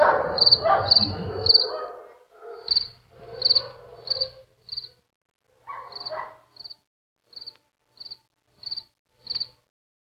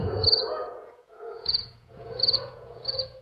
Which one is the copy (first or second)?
second